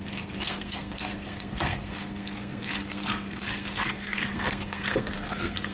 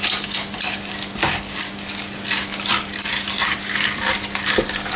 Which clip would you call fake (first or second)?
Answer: first